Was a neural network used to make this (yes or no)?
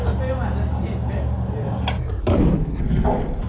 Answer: no